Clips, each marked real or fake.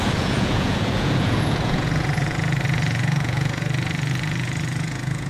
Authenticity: fake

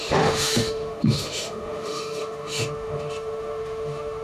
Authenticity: fake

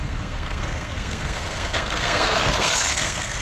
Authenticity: fake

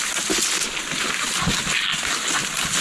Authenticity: real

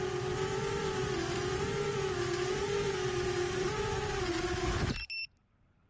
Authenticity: fake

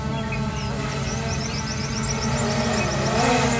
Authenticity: real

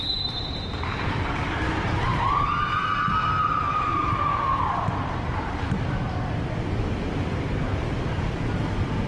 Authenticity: fake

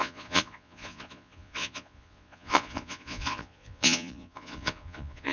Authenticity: fake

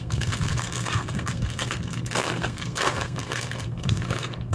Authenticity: fake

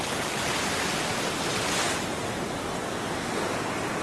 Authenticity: real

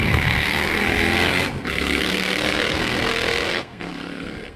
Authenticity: fake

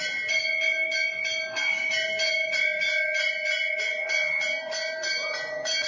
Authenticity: real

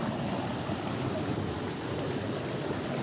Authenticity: real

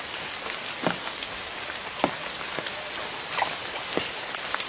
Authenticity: real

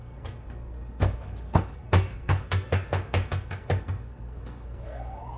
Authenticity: fake